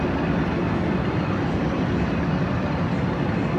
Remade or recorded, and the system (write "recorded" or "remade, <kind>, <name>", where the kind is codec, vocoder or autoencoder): recorded